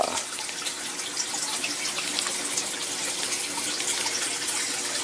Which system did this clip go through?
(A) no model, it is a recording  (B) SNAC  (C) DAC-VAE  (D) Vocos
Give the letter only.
A